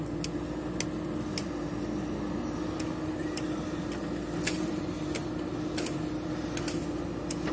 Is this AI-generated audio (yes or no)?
no